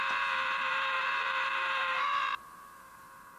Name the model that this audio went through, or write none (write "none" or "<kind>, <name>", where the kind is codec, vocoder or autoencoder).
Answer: vocoder, BigVGAN v2